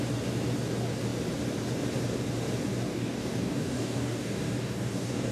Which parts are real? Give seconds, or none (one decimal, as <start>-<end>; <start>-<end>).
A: 0.0-2.9